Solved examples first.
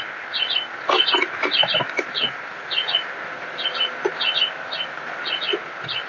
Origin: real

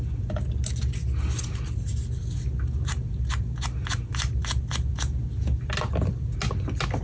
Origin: real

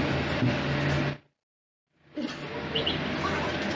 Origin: real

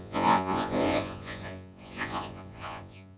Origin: fake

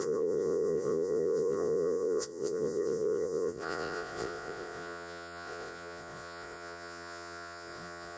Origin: fake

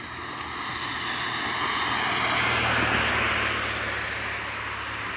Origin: real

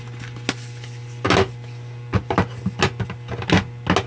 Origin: real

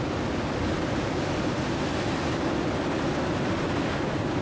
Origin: real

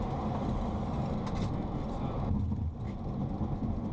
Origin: real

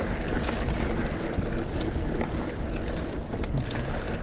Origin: real